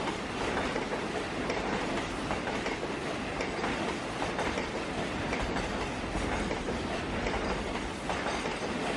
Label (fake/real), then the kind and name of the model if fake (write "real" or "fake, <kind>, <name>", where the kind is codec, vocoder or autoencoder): real